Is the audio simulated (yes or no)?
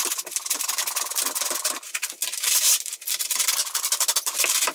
no